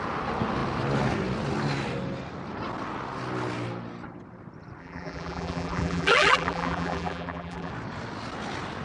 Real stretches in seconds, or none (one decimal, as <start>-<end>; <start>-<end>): 0.0-4.8; 7.7-8.8